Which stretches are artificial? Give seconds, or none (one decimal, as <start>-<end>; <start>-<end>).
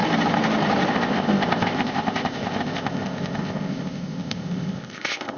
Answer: 0.9-5.4